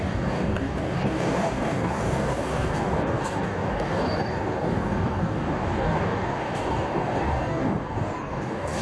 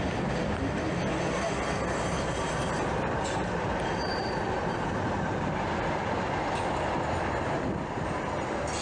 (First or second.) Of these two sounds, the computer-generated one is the first